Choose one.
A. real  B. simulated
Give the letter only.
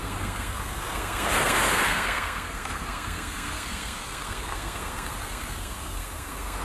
B